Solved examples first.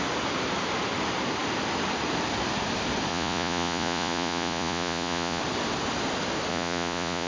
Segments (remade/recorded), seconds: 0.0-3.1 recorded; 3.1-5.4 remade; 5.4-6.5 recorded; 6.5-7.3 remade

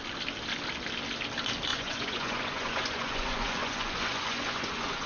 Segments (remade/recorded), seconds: 0.0-1.7 recorded; 1.7-5.1 remade

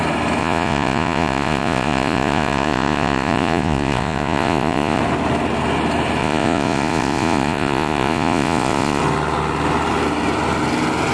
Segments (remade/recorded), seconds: 0.0-0.4 recorded; 0.4-5.0 remade; 5.0-6.2 recorded; 6.2-9.0 remade; 9.0-11.1 recorded

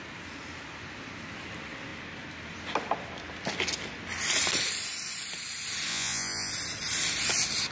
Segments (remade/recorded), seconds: 0.0-5.9 recorded; 5.9-6.5 remade; 6.5-7.7 recorded

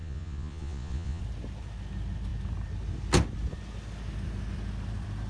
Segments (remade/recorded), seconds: 0.0-1.2 remade; 1.2-5.3 recorded

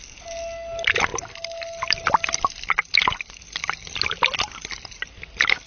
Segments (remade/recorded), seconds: 0.0-5.7 recorded

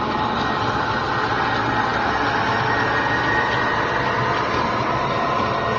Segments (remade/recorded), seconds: 0.0-5.8 recorded

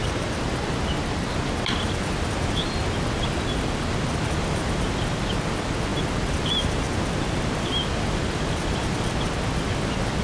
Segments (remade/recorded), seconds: 0.0-10.2 recorded